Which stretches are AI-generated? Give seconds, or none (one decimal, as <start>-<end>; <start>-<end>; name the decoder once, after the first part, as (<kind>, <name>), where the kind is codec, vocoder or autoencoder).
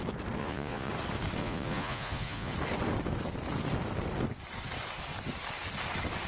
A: 0.4-0.9 (vocoder, Vocos); 1.4-2.5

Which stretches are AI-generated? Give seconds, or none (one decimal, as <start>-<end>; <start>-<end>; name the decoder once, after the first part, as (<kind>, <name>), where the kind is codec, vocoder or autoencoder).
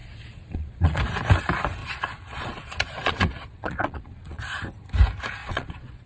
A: 0.0-1.0 (vocoder, Vocos); 1.8-4.4; 5.4-6.1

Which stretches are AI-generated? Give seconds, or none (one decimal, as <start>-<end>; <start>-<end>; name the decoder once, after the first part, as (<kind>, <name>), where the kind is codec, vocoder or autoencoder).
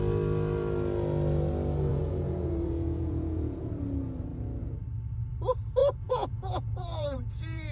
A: 1.9-3.7 (vocoder, Vocos); 5.8-7.7